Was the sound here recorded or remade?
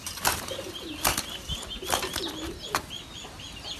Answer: recorded